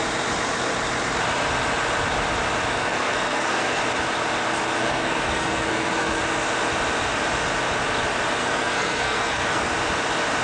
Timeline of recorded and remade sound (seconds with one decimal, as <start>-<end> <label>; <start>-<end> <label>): 0.0-2.7 recorded; 2.7-3.8 remade; 3.8-4.8 recorded; 4.8-6.2 remade; 6.2-8.4 recorded; 8.4-9.7 remade; 9.7-10.4 recorded

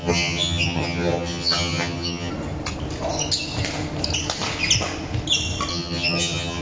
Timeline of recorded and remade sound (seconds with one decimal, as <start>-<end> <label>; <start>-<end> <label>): 0.0-2.3 remade; 2.3-5.7 recorded; 5.7-6.6 remade